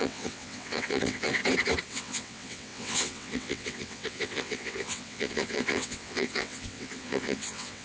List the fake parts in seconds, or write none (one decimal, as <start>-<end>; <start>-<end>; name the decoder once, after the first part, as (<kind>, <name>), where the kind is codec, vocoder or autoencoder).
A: 0.0-1.4 (vocoder, WaveNeXt); 1.9-7.8